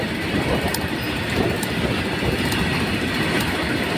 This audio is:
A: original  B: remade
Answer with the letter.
A